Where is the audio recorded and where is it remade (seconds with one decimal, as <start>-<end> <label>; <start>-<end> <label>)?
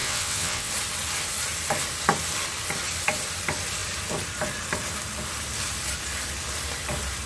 0.0-0.7 remade; 0.7-7.3 recorded